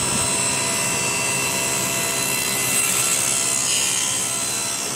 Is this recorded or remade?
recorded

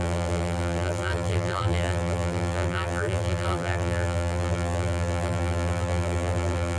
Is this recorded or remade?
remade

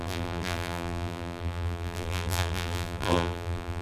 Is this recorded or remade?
remade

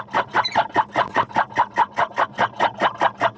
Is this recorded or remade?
recorded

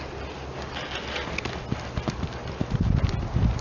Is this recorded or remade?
recorded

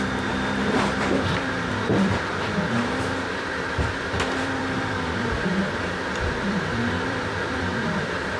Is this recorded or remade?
remade